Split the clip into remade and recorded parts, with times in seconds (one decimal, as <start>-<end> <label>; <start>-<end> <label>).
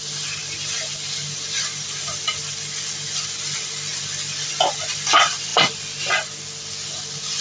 0.0-7.4 recorded